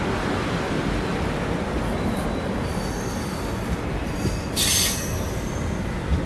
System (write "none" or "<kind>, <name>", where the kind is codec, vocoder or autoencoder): none